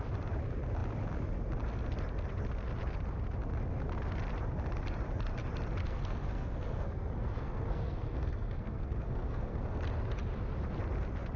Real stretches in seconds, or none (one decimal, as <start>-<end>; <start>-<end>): 0.0-5.8; 9.8-11.4